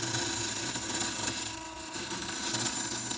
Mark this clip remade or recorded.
recorded